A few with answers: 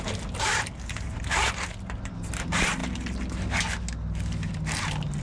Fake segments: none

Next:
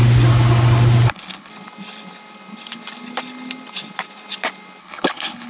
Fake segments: 1.1-1.5 (codec, HILCodec); 4.8-5.5

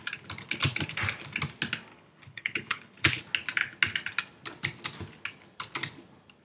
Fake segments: 1.9-3.2 (codec, HILCodec)

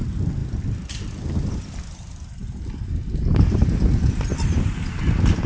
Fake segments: none

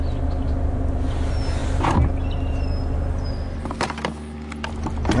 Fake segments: none